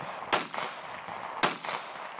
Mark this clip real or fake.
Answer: real